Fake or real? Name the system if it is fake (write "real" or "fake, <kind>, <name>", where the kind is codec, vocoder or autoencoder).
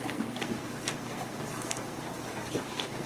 fake, codec, SNAC